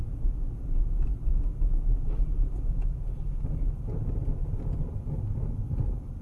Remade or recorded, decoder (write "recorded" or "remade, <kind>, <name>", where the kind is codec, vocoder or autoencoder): recorded